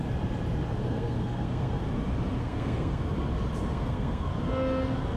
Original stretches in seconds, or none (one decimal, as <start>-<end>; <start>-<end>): 0.0-0.8; 1.8-2.4; 3.0-3.7; 4.3-5.2